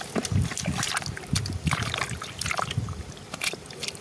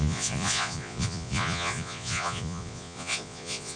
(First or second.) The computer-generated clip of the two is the second